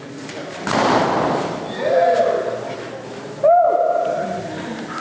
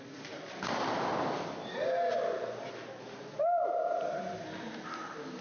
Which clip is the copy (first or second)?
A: first